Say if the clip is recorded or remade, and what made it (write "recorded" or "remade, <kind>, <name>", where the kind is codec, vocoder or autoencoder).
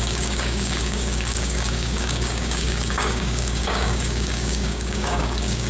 remade, codec, DAC